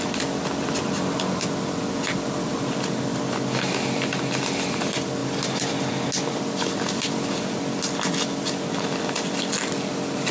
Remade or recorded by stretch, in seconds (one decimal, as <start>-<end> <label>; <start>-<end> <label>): 0.0-10.3 recorded